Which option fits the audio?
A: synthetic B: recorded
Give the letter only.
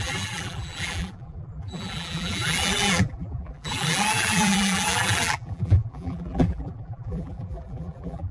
A